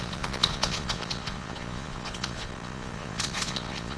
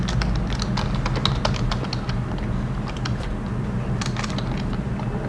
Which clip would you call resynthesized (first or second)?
first